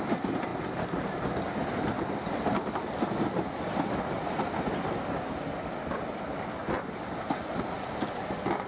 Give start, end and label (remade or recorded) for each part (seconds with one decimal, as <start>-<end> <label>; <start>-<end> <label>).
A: 0.0-8.7 recorded